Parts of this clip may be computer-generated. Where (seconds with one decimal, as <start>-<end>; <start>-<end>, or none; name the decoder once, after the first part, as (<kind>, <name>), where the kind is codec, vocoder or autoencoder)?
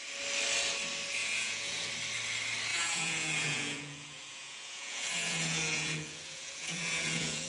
1.2-1.9 (vocoder, Vocos); 2.7-7.5